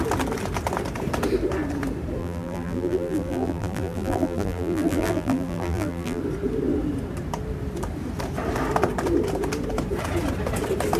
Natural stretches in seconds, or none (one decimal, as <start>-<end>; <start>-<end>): 0.0-2.2; 6.2-11.0